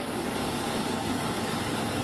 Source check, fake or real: fake